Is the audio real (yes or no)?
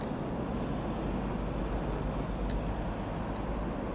yes